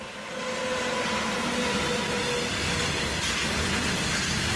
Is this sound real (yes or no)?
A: yes